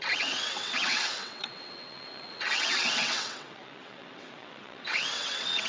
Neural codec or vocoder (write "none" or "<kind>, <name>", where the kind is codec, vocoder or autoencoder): vocoder, WaveNeXt